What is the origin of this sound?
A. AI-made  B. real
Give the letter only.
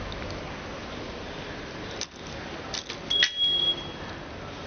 B